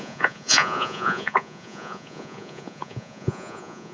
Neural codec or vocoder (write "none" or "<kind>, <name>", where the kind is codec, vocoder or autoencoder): vocoder, Vocos